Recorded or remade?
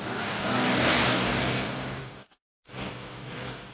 remade